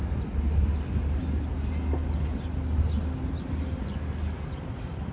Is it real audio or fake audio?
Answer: real